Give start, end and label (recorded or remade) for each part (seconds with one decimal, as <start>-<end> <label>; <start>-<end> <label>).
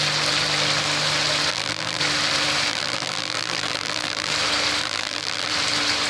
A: 0.0-1.5 recorded; 1.5-2.0 remade; 2.0-2.7 recorded; 2.7-4.3 remade; 4.3-4.8 recorded; 4.8-5.5 remade; 5.5-6.1 recorded